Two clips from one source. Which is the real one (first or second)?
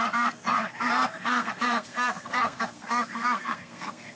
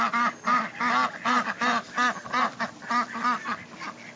second